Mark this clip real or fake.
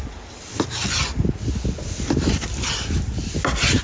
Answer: real